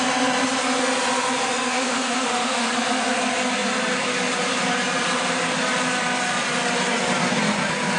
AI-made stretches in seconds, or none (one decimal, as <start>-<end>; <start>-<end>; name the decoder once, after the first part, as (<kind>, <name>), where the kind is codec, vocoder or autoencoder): 1.7-2.7 (autoencoder, DAC-VAE)